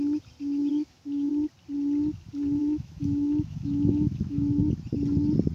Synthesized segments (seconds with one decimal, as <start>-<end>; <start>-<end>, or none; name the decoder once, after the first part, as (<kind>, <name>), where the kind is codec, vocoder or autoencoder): 0.7-1.3 (autoencoder, DAC-VAE); 2.6-4.6